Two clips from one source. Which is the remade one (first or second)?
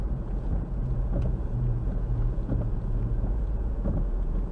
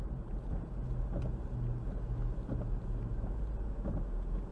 first